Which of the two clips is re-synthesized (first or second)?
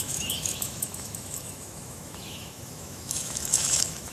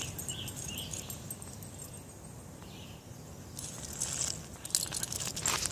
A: first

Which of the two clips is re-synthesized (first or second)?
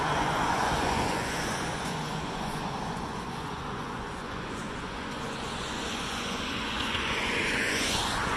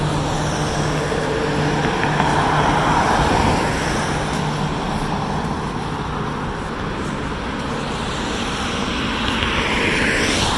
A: first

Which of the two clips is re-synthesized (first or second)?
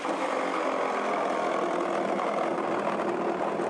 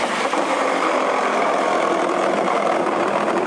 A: second